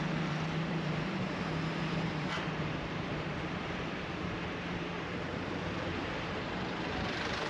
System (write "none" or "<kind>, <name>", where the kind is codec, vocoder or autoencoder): vocoder, BigVGAN v2